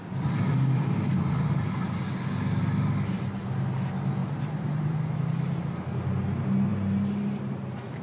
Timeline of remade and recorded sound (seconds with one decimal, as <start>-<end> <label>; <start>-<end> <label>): 0.0-4.2 recorded; 4.2-5.6 remade; 5.6-8.0 recorded